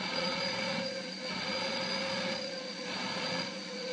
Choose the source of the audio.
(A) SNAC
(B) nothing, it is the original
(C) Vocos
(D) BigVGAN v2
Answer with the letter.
C